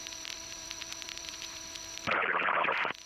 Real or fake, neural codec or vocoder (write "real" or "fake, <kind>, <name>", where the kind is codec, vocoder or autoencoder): fake, vocoder, BigVGAN v2